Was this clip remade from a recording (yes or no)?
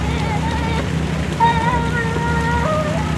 no